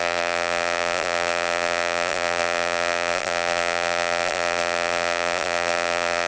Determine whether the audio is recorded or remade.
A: remade